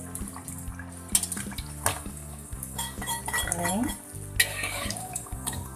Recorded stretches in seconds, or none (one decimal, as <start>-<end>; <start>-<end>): 0.0-1.9; 3.2-4.5